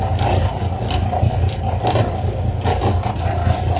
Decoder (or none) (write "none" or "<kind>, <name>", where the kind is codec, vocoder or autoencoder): none